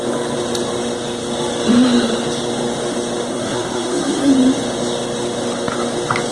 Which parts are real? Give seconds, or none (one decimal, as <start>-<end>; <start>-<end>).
0.0-3.3; 4.3-6.3